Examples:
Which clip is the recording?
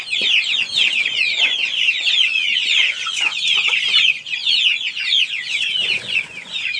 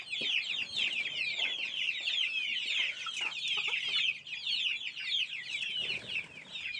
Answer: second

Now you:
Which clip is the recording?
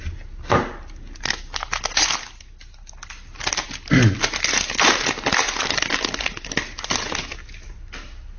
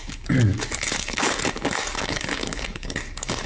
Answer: first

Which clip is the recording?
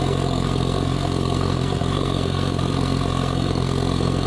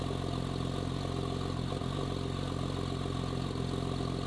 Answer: second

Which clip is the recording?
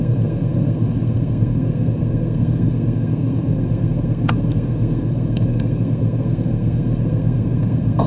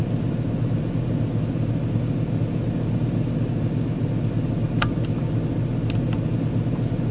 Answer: second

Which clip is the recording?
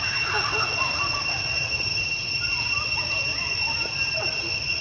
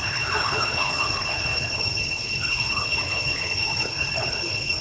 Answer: first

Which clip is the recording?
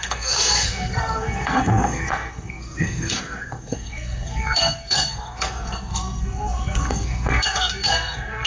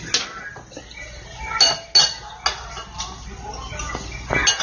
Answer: second